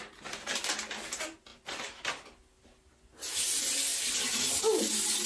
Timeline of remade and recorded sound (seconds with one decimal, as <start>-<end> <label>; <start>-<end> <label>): 0.0-5.3 recorded